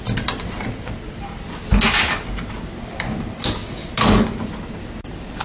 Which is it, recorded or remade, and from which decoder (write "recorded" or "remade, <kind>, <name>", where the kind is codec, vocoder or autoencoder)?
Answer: recorded